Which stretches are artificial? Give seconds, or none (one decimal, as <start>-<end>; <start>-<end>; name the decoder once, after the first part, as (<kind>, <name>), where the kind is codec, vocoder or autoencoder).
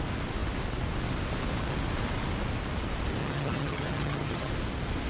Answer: 3.2-4.5 (vocoder, HiFi-GAN)